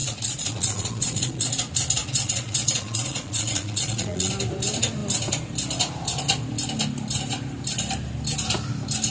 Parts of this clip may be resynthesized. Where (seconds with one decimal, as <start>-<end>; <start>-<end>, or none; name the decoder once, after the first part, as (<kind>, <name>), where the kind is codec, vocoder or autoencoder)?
0.0-1.5 (vocoder, Vocos); 2.0-4.3